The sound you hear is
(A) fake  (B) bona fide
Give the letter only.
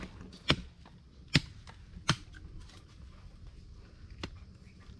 B